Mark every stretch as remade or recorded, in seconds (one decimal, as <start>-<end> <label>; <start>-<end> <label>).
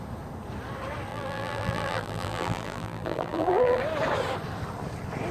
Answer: 0.0-1.1 recorded; 1.1-3.8 remade; 3.8-5.3 recorded